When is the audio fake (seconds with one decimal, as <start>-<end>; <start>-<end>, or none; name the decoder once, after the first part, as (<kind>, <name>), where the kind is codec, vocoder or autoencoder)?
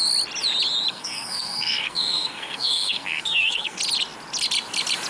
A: 0.9-3.8 (codec, SNAC)